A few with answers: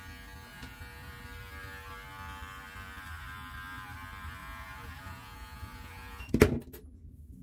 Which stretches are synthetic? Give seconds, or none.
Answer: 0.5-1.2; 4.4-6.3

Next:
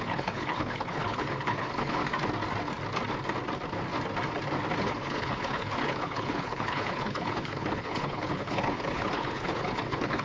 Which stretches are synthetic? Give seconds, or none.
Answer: 0.0-2.0; 4.8-10.2

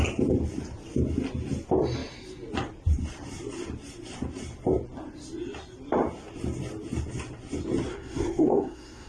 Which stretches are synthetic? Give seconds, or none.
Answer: 7.9-9.1

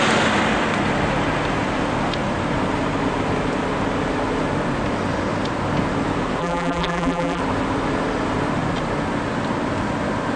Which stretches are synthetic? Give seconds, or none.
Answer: 6.4-7.4

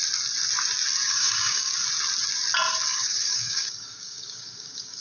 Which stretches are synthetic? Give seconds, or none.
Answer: 1.0-1.7; 2.9-5.0